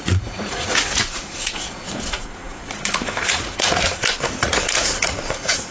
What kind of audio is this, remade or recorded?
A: remade